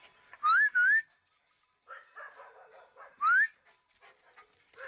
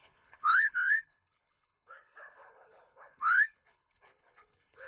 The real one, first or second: first